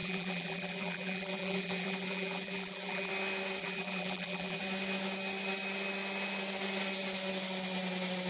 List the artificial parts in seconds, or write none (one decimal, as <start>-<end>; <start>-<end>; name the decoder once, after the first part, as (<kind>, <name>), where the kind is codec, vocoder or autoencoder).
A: 0.0-3.1 (vocoder, BigVGAN v2); 3.6-4.6